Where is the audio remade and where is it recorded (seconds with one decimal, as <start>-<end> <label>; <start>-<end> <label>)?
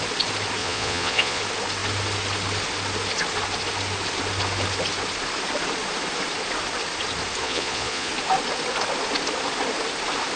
0.0-0.6 recorded; 0.6-1.4 remade; 1.4-7.4 recorded; 7.4-8.1 remade; 8.1-10.4 recorded